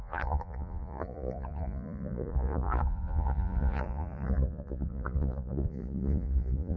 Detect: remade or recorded remade